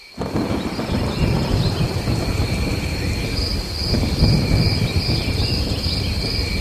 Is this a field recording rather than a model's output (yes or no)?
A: yes